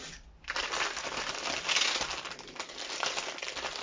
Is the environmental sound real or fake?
real